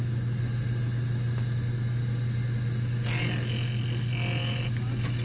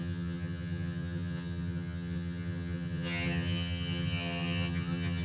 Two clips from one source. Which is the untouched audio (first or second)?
first